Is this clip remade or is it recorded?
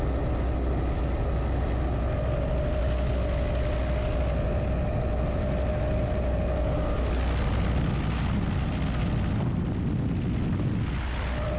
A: recorded